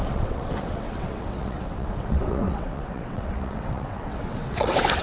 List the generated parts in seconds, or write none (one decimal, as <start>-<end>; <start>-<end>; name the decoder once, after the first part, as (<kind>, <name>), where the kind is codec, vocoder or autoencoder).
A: 0.0-5.0 (vocoder, WaveNeXt)